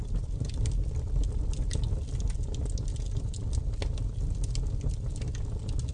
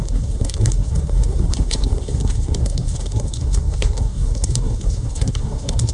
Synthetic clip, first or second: second